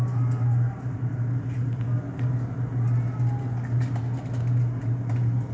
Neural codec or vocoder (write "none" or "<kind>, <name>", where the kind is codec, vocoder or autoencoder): none